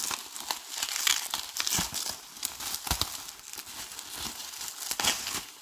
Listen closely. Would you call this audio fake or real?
real